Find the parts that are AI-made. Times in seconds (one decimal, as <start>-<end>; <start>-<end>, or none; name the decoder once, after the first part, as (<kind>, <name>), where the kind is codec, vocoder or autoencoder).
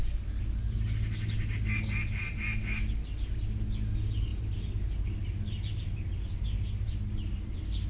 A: none